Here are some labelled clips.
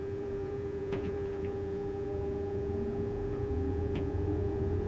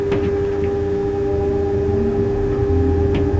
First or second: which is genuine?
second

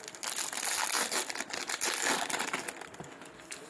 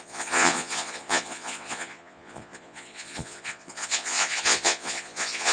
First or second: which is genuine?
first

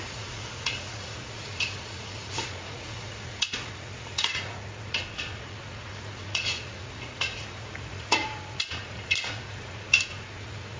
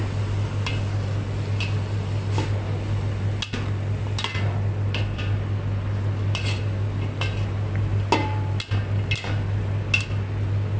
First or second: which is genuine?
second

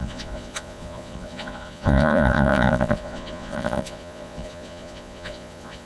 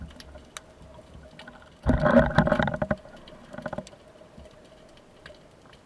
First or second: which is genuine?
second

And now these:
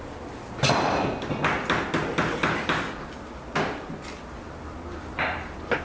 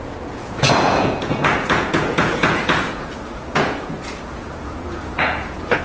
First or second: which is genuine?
first